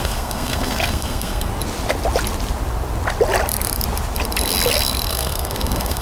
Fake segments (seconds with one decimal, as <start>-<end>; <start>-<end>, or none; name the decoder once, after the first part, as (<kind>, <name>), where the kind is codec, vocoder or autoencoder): 0.0-1.5 (codec, SNAC); 5.1-6.0